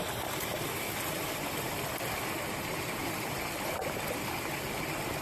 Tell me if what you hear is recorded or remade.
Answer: recorded